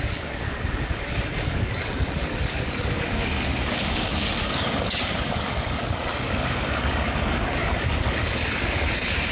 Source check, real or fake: fake